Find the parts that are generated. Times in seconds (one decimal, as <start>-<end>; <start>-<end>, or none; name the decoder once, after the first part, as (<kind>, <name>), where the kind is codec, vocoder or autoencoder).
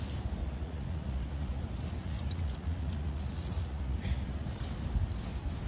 0.4-1.6 (vocoder, Vocos); 2.0-4.6